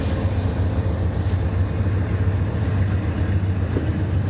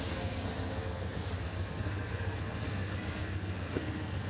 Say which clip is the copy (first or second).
second